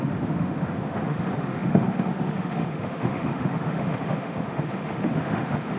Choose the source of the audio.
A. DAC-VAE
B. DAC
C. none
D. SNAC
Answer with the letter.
A